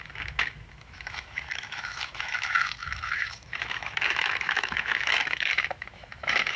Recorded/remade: remade